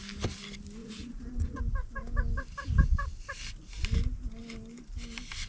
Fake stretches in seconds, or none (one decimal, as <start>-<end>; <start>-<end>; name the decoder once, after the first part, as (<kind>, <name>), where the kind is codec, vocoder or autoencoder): 0.8-1.6 (vocoder, Vocos)